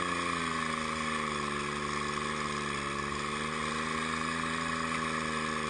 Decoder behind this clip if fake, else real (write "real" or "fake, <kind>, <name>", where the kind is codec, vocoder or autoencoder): real